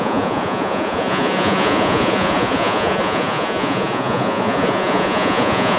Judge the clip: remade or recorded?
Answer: remade